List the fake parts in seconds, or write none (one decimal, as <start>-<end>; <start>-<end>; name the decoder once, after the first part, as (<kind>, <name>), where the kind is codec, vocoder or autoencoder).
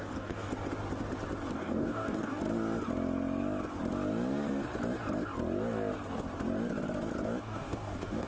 0.0-0.5 (codec, DAC); 1.5-2.4; 7.4-8.3